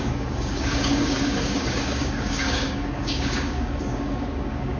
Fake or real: fake